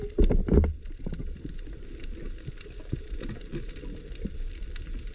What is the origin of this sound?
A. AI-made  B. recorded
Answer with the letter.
B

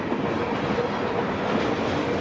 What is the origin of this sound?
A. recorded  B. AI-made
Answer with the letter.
A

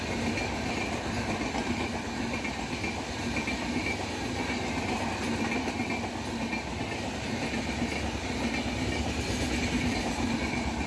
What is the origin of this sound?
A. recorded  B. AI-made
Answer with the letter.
A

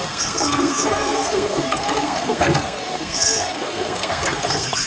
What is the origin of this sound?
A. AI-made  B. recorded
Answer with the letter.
A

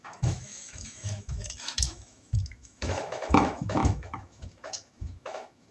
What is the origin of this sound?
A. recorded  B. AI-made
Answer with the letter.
B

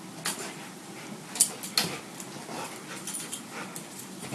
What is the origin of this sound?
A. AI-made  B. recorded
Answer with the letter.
B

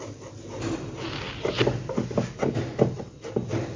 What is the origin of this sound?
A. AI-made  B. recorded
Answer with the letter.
B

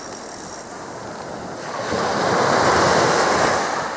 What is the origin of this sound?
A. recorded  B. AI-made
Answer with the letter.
A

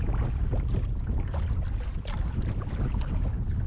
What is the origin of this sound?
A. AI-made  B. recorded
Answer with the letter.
B